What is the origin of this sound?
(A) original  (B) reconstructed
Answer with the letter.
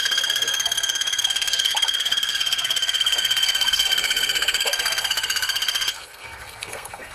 B